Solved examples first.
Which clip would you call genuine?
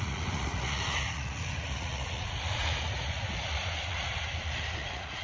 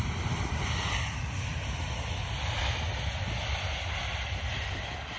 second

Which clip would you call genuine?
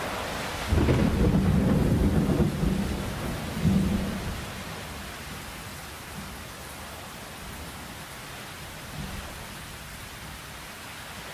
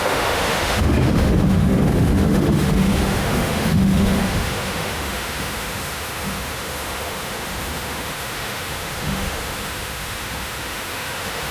first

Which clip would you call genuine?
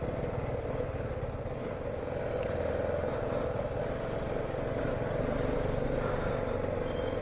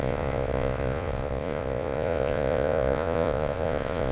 first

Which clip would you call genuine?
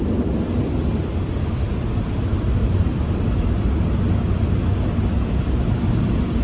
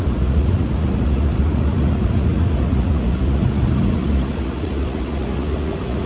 first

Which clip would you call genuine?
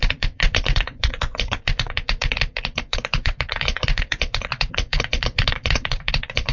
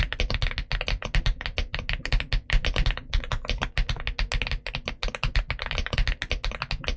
second